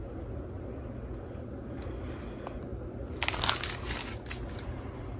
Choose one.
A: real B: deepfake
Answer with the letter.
A